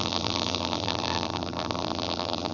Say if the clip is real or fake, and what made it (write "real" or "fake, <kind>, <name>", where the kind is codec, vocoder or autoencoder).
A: fake, vocoder, BigVGAN v2